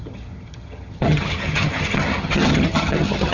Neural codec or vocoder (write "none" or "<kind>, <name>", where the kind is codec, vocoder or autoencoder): vocoder, HiFi-GAN